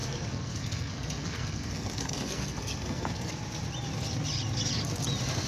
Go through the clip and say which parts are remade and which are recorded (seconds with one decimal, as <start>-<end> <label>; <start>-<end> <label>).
0.0-3.3 remade; 3.3-5.5 recorded